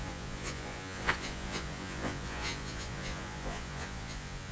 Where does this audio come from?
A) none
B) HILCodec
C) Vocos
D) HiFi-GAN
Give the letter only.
C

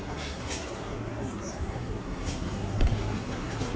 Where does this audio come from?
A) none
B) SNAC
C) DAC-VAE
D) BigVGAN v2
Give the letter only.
B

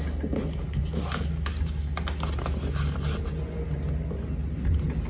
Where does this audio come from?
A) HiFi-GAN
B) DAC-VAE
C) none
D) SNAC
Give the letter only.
C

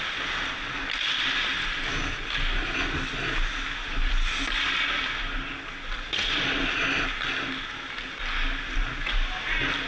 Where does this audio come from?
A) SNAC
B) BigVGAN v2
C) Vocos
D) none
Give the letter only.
D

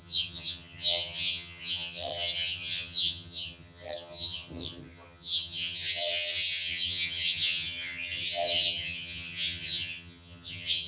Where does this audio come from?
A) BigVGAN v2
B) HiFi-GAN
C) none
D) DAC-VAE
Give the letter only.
B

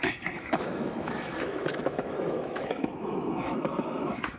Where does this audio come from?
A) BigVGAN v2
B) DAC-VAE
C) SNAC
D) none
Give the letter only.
B